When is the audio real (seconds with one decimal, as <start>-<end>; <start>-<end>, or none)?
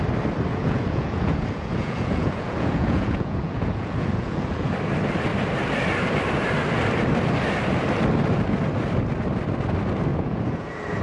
0.0-0.5; 4.7-10.1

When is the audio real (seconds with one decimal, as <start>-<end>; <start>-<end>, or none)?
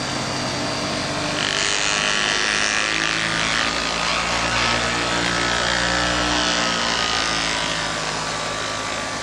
0.0-9.2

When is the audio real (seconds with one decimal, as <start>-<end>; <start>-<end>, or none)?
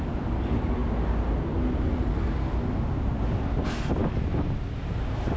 0.0-5.4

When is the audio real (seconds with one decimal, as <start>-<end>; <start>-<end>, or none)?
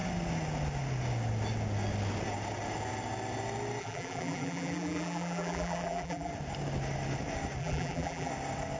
0.0-3.8; 6.3-7.6; 8.3-8.8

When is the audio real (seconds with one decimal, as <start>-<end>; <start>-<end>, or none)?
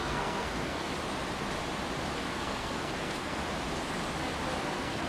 0.9-2.3; 3.4-4.6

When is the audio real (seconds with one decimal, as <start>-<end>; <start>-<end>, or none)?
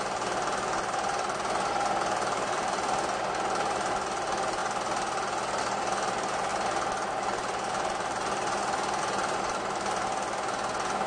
0.0-11.1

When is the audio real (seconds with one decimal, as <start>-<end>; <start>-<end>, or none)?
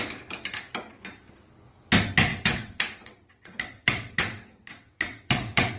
0.0-2.3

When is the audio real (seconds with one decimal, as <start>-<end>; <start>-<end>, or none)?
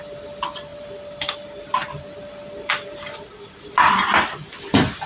none